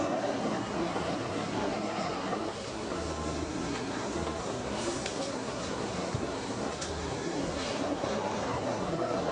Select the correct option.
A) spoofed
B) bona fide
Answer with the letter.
A